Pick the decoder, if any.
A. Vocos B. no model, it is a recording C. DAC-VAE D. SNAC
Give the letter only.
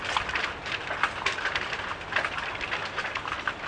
B